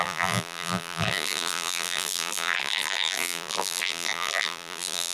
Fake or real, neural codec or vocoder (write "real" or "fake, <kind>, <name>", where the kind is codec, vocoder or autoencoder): fake, vocoder, BigVGAN v2